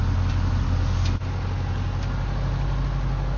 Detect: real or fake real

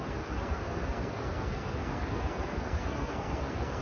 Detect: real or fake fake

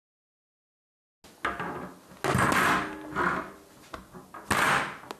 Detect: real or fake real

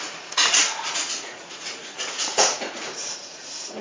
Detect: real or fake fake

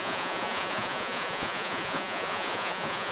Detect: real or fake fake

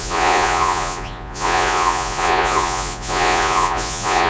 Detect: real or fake fake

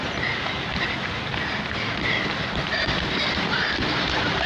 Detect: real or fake fake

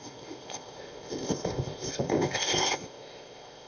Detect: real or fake fake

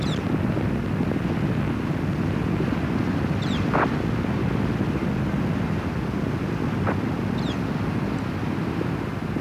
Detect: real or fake real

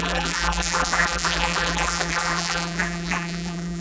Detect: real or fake fake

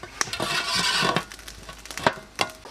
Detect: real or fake real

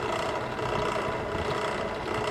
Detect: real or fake real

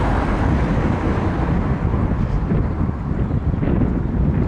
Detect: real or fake real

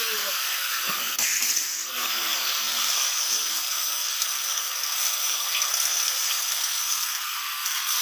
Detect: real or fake fake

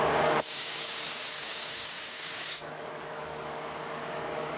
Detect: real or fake fake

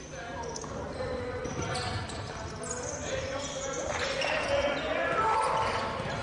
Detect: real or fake real